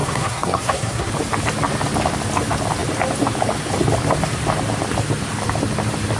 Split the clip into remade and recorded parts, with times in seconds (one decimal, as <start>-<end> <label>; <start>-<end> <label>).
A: 0.0-1.1 remade; 1.1-6.2 recorded